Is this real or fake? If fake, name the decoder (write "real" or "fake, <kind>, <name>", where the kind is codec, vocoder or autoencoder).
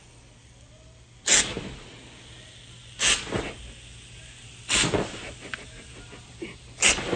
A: real